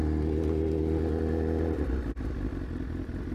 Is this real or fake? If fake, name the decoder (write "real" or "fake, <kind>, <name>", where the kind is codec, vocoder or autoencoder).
real